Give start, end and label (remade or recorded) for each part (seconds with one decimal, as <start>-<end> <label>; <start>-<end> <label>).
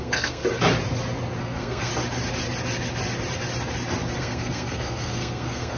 0.0-0.4 remade; 0.4-1.4 recorded; 1.4-1.9 remade; 1.9-4.2 recorded; 4.2-5.8 remade